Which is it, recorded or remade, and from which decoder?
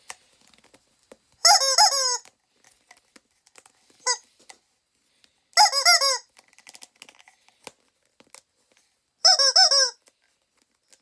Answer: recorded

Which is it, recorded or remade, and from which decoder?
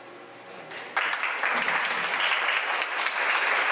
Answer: recorded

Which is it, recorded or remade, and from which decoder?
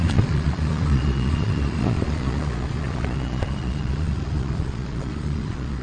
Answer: remade, vocoder, Vocos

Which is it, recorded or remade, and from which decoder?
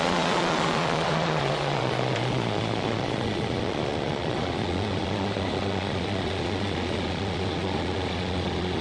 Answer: remade, vocoder, Vocos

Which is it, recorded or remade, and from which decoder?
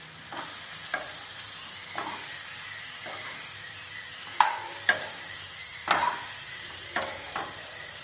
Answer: recorded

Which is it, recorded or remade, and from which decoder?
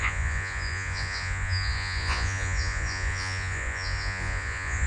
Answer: remade, vocoder, Vocos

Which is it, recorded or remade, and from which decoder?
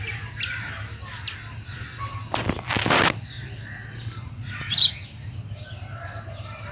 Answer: recorded